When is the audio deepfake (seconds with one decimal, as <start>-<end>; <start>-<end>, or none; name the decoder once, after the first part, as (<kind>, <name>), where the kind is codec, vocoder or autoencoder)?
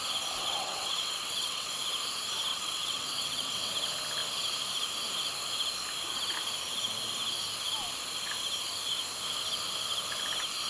0.4-1.7 (vocoder, WaveNeXt); 2.5-3.7